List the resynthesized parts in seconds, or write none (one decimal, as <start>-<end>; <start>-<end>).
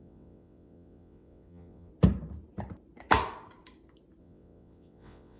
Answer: 0.0-1.9; 4.2-5.4